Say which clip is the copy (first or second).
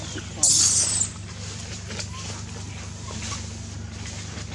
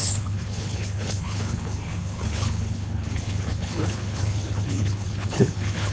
second